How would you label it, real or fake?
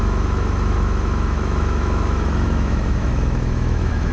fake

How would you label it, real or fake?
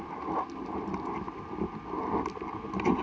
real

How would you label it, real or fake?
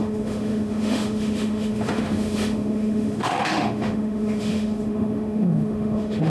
fake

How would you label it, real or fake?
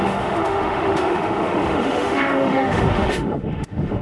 fake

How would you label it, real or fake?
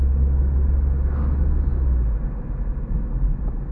real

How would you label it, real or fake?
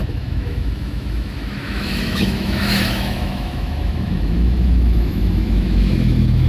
fake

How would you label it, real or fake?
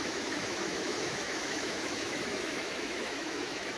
fake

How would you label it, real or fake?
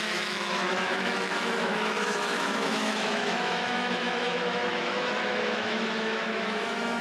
fake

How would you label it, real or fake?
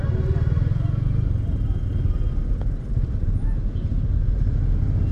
real